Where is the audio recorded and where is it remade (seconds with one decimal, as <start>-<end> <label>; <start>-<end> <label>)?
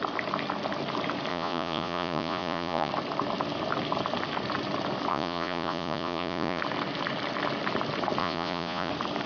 0.0-1.3 recorded; 1.3-2.9 remade; 2.9-5.1 recorded; 5.1-6.6 remade; 6.6-8.2 recorded; 8.2-8.9 remade; 8.9-9.3 recorded